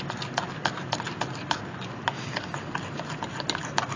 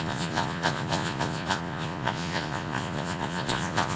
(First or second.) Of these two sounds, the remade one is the second